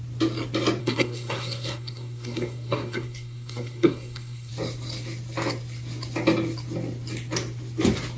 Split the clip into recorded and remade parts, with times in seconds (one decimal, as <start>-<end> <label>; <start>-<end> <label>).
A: 0.0-0.8 recorded; 0.8-4.5 remade; 4.5-8.2 recorded